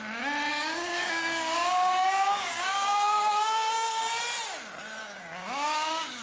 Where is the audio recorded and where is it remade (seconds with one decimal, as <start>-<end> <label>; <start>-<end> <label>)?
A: 0.0-0.5 recorded; 0.5-4.2 remade; 4.2-5.0 recorded; 5.0-6.2 remade